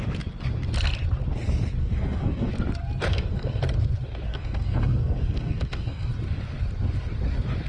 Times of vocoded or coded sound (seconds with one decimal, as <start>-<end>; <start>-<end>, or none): 1.8-2.5; 3.1-3.6; 4.3-6.1